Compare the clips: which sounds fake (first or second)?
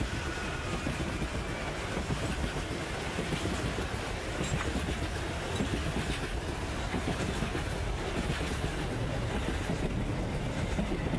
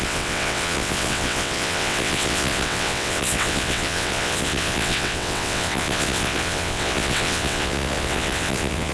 second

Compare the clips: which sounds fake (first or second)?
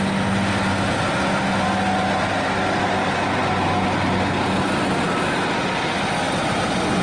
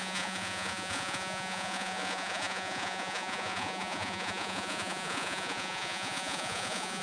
second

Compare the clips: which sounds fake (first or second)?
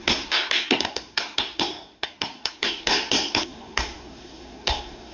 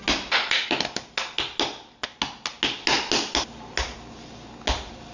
first